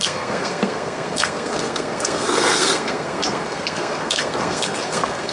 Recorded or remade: remade